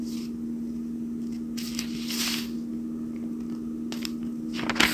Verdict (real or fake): real